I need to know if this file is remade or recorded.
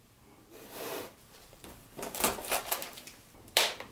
remade